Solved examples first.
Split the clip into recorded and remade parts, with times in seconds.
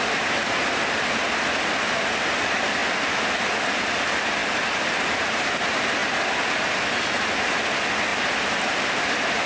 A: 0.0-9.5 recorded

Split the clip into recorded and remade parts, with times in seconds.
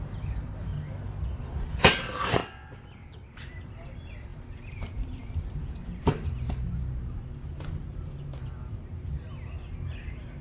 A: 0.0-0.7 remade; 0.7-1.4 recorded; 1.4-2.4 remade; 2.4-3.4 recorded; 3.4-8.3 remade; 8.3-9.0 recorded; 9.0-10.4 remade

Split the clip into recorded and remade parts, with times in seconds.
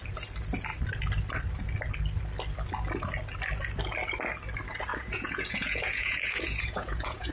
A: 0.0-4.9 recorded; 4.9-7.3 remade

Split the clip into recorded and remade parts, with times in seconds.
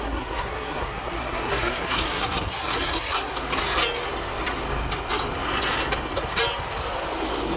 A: 0.0-3.3 remade; 3.3-7.6 recorded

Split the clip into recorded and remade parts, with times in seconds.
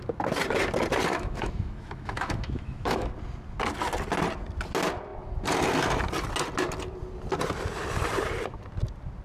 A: 0.0-1.1 recorded; 1.1-3.1 remade; 3.1-9.2 recorded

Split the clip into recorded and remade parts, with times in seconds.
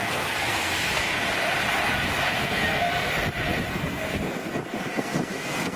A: 0.0-1.2 remade; 1.2-2.4 recorded; 2.4-3.1 remade; 3.1-3.7 recorded; 3.7-5.8 remade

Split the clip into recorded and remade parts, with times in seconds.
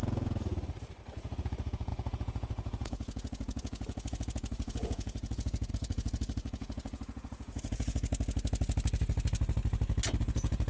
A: 0.0-0.5 remade; 0.5-1.1 recorded; 1.1-8.1 remade; 8.1-10.2 recorded; 10.2-10.7 remade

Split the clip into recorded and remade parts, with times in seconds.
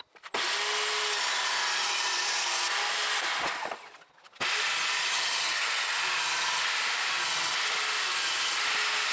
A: 0.0-5.0 recorded; 5.0-5.9 remade; 5.9-9.1 recorded